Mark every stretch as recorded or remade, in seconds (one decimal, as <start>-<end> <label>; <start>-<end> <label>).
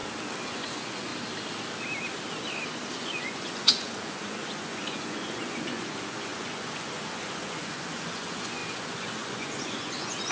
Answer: 0.0-0.5 recorded; 0.5-1.1 remade; 1.1-2.9 recorded; 2.9-10.3 remade